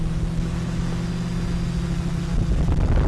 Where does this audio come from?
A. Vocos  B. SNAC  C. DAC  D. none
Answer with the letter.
D